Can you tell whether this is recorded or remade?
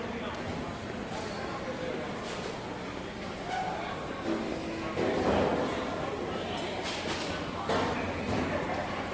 recorded